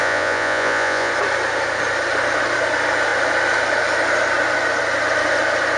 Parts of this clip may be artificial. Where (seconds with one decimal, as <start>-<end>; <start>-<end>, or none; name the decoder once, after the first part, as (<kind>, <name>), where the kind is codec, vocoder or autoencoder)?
0.0-1.1 (vocoder, Vocos)